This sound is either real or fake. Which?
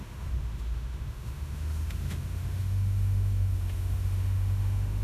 fake